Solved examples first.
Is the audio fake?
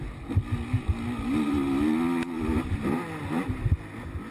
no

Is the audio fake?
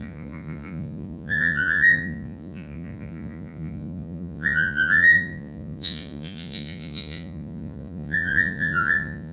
yes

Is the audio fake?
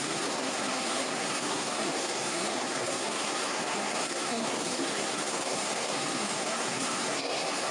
yes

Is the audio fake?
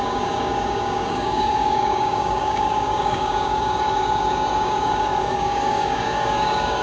yes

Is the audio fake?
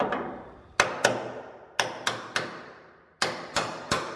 no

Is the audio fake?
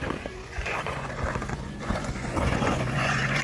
yes